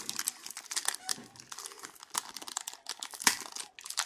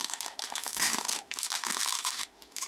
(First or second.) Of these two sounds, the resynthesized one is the second